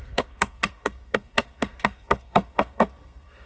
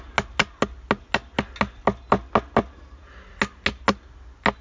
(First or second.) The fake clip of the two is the first